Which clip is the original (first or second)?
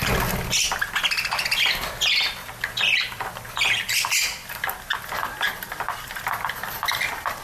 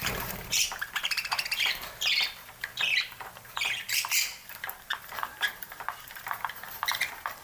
first